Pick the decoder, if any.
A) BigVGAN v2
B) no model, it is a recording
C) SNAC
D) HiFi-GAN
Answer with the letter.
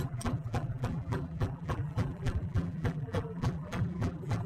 A